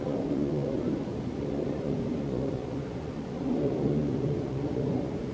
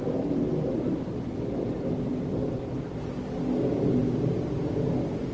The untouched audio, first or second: second